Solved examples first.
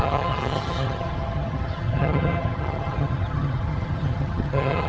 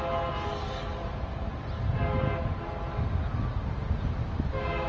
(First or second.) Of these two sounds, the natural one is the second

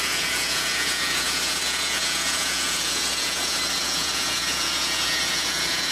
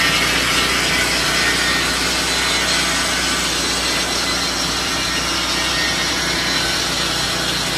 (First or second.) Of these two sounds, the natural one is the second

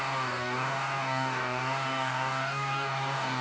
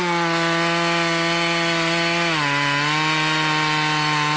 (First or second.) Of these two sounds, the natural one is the second